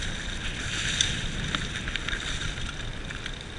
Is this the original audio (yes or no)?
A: yes